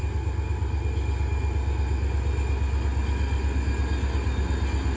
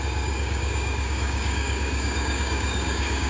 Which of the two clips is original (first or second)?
first